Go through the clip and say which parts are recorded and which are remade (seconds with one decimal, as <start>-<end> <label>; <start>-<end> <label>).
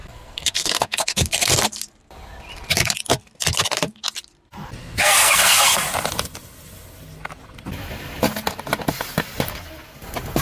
0.0-1.5 remade; 1.5-4.8 recorded; 4.8-5.8 remade; 5.8-10.4 recorded